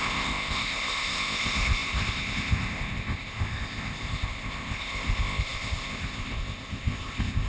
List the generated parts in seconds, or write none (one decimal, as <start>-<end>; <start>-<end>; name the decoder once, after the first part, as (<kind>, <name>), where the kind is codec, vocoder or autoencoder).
0.0-7.5 (codec, ZipCodec)